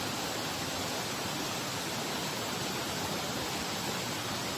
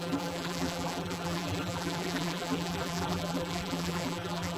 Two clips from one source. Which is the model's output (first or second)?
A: second